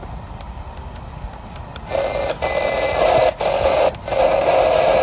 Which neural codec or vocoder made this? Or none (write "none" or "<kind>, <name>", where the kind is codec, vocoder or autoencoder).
none